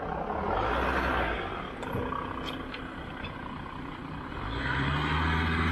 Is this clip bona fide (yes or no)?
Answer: yes